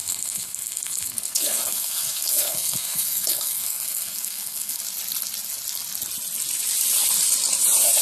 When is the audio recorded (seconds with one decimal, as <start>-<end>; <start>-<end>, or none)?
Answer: 4.8-8.0